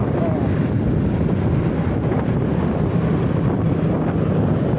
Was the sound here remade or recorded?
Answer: recorded